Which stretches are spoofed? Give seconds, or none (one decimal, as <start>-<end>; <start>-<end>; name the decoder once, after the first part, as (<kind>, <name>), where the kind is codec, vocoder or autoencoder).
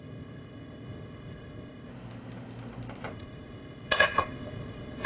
0.0-1.9 (codec, ZipCodec); 3.1-5.1